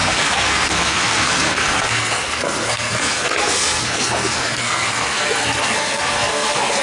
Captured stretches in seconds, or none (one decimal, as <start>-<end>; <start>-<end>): none